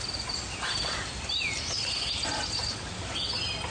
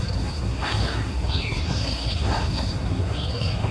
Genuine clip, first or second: first